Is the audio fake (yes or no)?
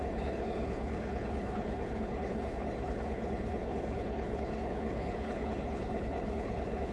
yes